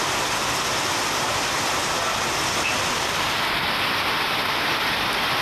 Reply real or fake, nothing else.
real